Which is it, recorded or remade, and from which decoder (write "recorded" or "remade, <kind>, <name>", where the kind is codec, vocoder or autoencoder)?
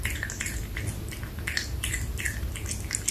recorded